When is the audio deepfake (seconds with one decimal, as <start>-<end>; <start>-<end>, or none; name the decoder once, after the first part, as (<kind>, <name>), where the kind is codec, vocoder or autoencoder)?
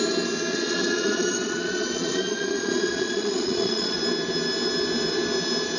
0.5-4.0 (vocoder, Vocos)